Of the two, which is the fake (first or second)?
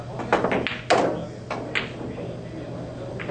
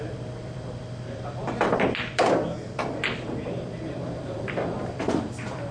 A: second